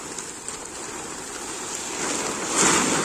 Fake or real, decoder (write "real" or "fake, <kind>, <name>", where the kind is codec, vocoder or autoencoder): real